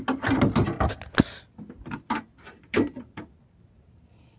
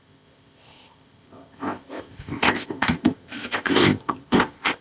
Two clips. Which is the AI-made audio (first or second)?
second